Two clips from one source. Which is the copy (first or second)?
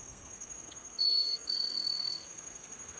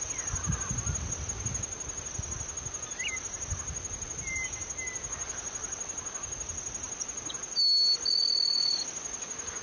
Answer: first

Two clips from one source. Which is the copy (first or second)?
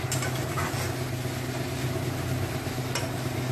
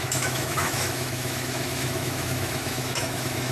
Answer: second